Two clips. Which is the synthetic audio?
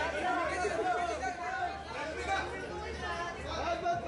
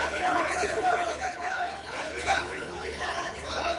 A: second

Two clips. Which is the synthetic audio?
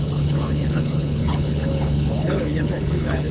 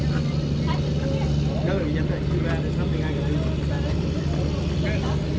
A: first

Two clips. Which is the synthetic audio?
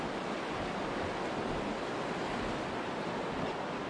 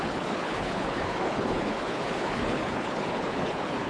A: second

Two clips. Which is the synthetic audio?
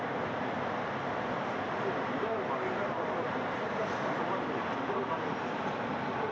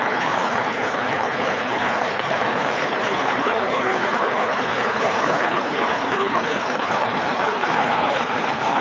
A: second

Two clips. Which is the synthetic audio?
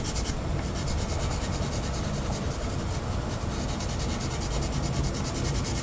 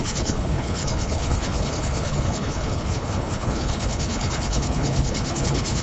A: second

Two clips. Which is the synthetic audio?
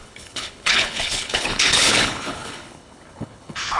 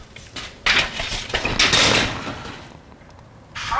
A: first